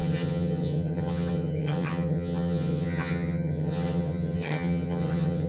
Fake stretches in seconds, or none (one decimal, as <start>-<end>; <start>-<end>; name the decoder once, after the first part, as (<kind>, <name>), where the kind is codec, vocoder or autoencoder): 0.0-5.5 (vocoder, HiFi-GAN)